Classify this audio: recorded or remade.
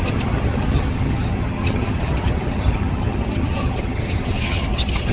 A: remade